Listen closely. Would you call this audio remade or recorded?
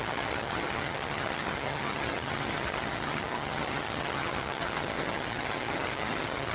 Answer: remade